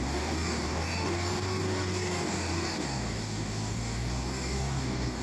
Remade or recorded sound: remade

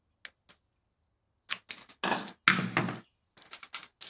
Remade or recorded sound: recorded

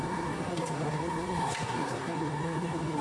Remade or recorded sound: remade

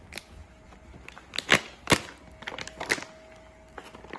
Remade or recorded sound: recorded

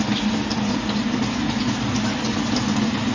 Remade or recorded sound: recorded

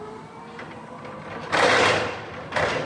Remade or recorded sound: recorded